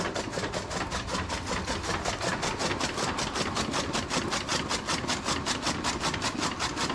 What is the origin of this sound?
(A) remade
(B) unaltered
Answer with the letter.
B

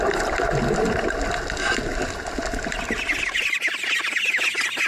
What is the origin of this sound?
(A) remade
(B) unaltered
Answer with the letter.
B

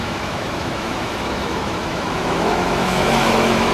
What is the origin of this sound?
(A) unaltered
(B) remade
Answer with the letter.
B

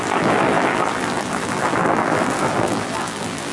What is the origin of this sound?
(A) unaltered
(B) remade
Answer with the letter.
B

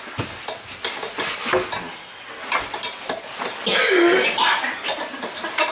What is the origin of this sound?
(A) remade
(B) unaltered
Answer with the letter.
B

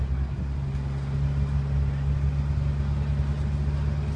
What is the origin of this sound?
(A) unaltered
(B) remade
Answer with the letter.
A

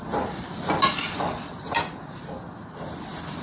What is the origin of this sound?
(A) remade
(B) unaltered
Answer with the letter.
A